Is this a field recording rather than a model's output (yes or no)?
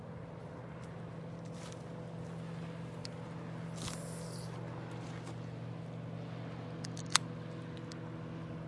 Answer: yes